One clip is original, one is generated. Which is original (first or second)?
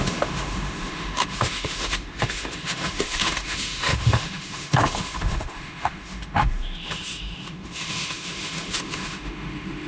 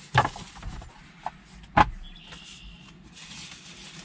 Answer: second